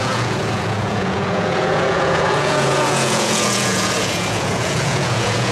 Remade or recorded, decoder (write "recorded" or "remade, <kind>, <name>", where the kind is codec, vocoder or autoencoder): remade, vocoder, Vocos